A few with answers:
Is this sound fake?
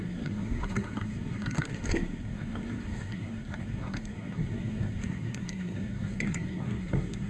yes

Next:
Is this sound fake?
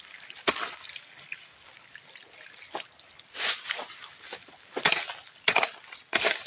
no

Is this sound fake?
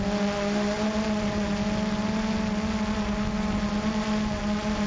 no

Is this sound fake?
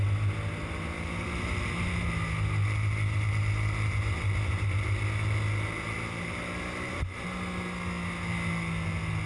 no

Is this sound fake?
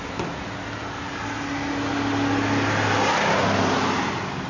no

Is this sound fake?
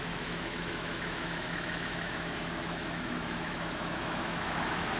yes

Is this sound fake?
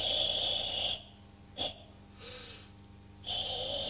no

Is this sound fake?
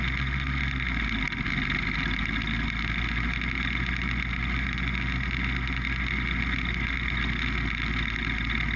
no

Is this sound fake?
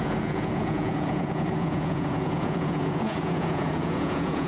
yes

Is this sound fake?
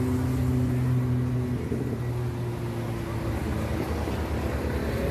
no